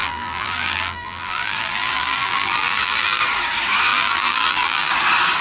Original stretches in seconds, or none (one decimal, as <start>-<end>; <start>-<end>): 3.2-3.9; 4.9-5.4